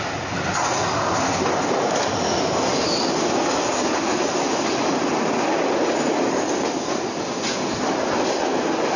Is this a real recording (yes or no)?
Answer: yes